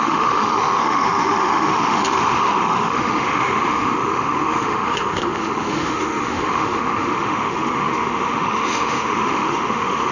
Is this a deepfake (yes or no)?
yes